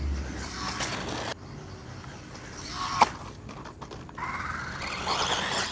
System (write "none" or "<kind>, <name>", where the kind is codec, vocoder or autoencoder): none